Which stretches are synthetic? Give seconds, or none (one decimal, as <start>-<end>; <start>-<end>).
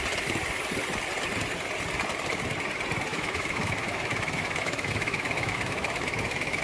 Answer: 3.1-6.6